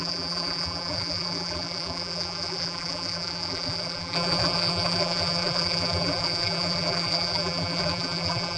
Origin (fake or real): fake